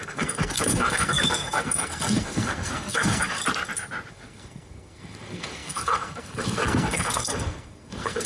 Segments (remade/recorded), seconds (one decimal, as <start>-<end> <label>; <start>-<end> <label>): 0.0-3.4 remade; 3.4-4.1 recorded; 4.1-8.3 remade